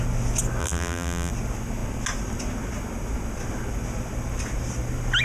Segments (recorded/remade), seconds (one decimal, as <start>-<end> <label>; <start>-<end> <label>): 0.0-0.6 recorded; 0.6-1.3 remade; 1.3-5.2 recorded